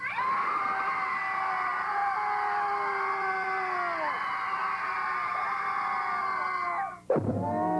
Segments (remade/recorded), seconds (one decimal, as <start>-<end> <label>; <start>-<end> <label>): 0.0-7.8 recorded